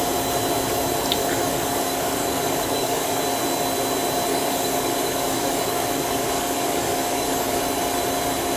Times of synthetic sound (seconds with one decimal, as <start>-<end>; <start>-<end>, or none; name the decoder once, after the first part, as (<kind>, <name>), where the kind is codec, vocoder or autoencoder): 1.2-3.2 (codec, DAC); 4.3-7.6